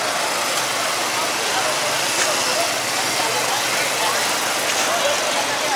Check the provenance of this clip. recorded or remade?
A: recorded